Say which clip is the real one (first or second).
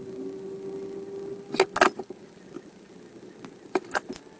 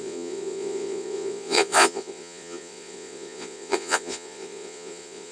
first